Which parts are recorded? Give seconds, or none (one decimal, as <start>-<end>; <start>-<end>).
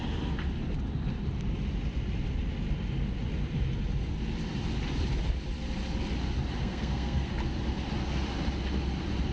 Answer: 0.0-6.6; 7.3-9.3